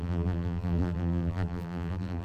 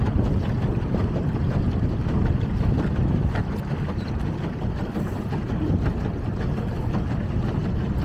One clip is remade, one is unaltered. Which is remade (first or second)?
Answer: first